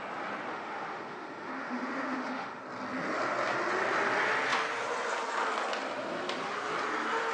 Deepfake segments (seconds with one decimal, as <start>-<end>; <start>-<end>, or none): 0.5-2.6